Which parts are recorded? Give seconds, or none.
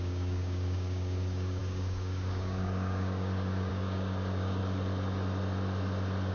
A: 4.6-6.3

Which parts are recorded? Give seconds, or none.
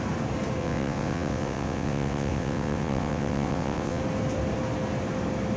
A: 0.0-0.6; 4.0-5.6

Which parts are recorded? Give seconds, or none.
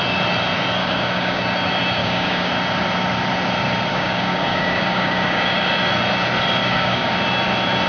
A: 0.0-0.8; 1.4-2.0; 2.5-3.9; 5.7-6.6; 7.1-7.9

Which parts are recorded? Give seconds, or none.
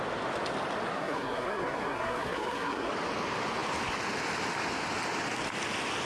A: 0.0-0.9; 2.9-6.1